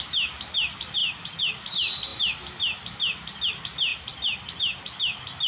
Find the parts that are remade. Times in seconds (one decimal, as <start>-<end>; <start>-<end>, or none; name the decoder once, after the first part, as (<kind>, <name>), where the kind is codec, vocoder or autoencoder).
1.0-1.7 (vocoder, BigVGAN v2); 3.9-4.5